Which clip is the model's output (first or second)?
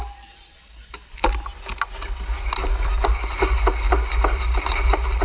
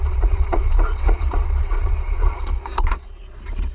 second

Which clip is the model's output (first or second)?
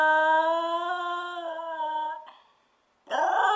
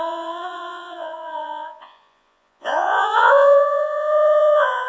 second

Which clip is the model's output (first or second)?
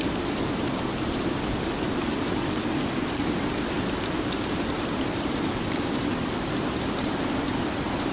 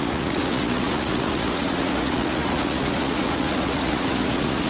second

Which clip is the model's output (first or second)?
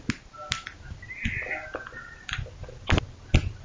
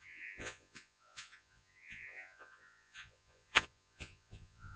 second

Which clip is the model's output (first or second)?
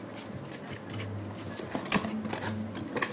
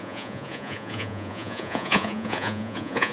second